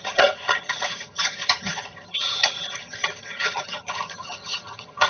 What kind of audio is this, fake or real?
fake